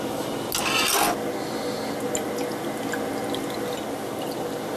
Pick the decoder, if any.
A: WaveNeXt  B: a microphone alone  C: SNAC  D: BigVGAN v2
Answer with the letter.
B